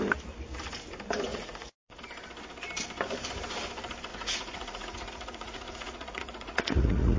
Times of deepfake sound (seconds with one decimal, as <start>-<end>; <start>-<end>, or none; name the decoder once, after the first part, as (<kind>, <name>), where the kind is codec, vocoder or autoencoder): 1.3-2.0 (vocoder, Vocos); 4.1-7.2